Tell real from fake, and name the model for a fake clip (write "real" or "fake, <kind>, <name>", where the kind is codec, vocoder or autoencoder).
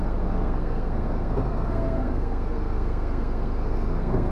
fake, codec, SNAC